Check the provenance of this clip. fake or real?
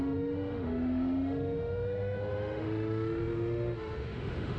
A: fake